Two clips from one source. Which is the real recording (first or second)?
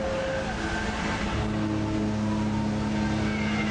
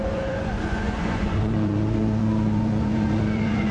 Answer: first